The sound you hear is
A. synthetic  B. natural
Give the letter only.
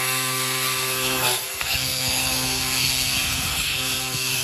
A